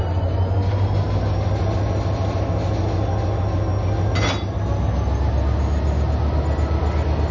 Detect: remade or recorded recorded